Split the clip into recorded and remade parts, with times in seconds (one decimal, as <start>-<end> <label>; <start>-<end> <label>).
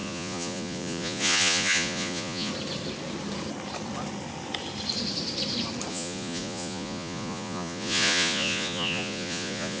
0.0-2.5 remade; 2.5-5.9 recorded; 5.9-9.8 remade